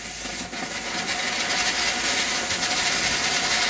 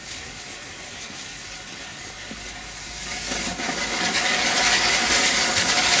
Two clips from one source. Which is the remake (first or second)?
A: second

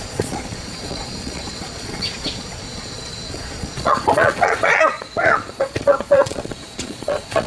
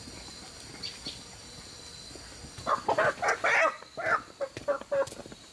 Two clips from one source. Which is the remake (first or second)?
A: first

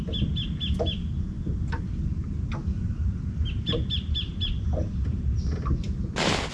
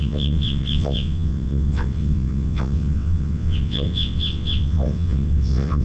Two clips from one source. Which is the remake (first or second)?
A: second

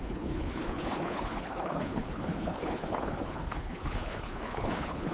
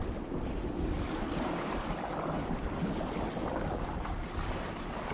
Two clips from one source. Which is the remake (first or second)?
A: first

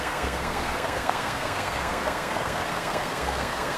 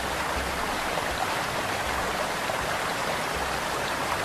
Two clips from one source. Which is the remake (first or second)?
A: first